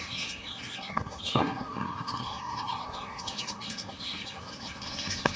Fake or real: fake